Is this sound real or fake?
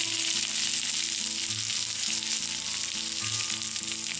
real